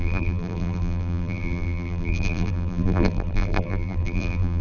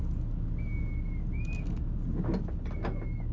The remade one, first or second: first